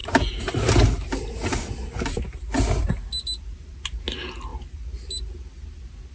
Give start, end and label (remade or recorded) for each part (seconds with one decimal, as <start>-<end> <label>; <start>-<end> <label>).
0.0-6.1 recorded